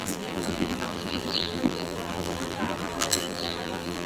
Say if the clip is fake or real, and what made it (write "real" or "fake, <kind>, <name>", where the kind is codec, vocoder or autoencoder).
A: fake, vocoder, BigVGAN v2